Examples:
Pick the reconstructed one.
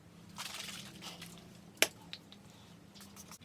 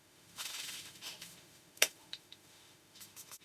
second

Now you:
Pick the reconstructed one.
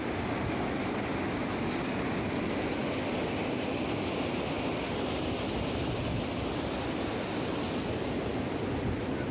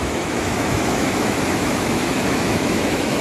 second